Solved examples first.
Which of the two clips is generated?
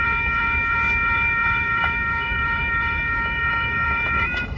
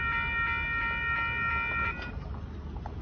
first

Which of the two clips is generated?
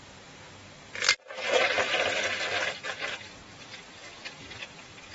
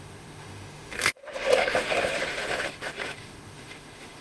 second